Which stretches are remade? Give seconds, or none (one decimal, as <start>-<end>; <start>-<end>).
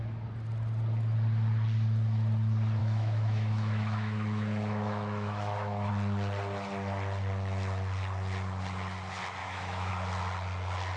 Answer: 2.8-5.9; 9.4-9.9